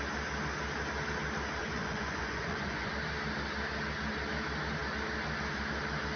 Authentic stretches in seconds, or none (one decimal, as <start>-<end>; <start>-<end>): 0.0-1.6; 2.9-6.2